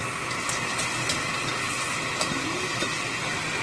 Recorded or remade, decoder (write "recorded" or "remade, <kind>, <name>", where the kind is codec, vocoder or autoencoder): recorded